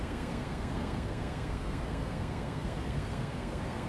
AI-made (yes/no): yes